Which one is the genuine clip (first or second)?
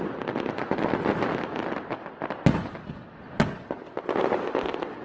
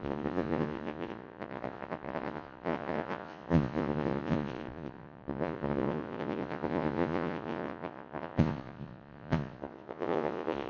first